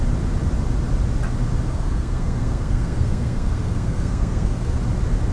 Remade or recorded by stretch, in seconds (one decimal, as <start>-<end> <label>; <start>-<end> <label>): 0.0-1.7 recorded; 1.7-4.8 remade; 4.8-5.3 recorded